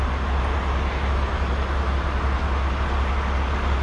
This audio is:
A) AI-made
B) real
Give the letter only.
B